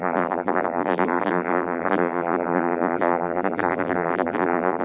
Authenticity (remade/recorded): remade